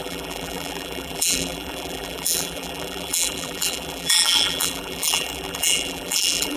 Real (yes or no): no